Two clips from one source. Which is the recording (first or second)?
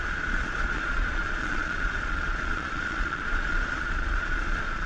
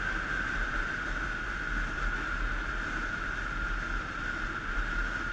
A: second